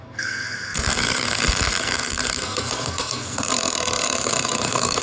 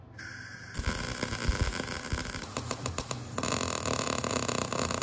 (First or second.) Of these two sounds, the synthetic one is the first